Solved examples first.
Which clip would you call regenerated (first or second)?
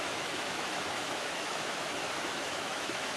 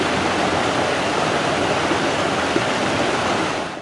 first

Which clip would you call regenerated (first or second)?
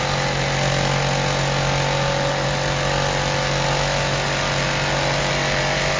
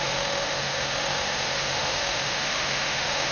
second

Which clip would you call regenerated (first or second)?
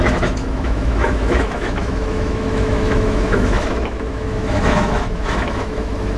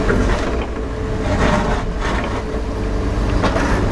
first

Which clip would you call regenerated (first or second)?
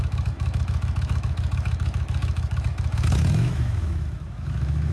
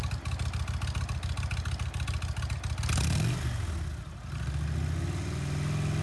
first